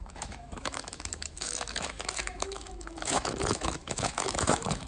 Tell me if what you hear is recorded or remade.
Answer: remade